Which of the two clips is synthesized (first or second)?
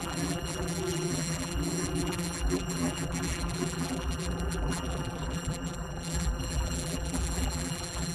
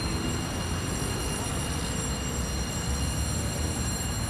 first